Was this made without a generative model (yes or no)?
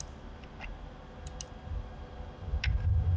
yes